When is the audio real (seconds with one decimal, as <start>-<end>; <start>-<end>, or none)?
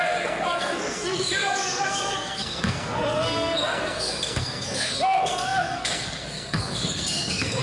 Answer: none